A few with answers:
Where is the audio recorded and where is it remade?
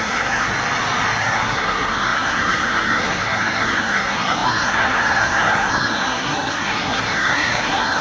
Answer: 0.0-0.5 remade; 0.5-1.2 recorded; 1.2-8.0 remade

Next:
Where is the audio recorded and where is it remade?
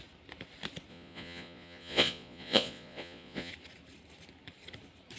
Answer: 0.0-0.9 recorded; 0.9-3.5 remade; 3.5-5.2 recorded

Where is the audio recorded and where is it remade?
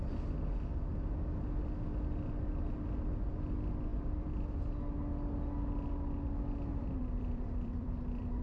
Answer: 0.0-3.9 recorded; 3.9-4.6 remade; 4.6-6.7 recorded; 6.7-8.4 remade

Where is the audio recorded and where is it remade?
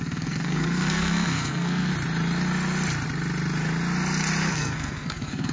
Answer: 0.0-1.9 remade; 1.9-4.5 recorded; 4.5-5.5 remade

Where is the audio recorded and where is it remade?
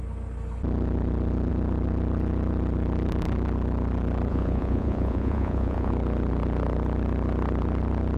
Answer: 0.0-4.3 recorded; 4.3-5.9 remade; 5.9-8.2 recorded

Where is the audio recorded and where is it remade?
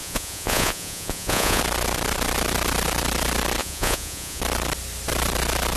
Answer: 0.0-1.6 remade; 1.6-3.6 recorded; 3.6-4.4 remade; 4.4-5.8 recorded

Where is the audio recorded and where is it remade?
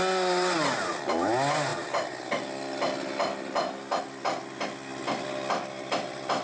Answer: 0.0-6.4 recorded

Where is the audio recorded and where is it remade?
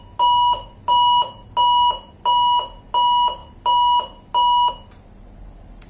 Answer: 0.0-5.9 recorded